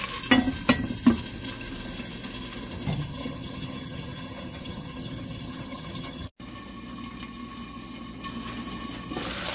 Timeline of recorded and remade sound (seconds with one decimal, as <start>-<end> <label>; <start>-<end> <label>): 0.0-2.9 recorded; 2.9-6.3 remade; 6.3-9.5 recorded